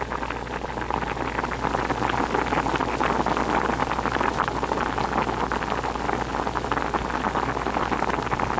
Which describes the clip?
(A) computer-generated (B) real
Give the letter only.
B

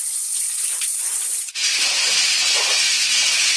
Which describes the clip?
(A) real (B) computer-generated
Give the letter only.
A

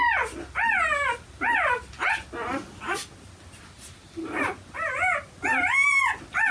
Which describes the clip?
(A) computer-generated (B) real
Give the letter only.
B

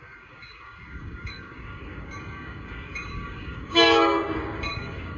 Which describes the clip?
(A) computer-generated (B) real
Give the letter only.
A